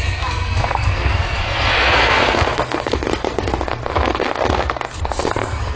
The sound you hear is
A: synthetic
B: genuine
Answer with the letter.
A